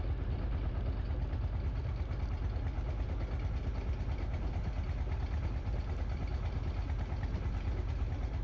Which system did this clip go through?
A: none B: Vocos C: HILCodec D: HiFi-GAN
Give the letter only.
A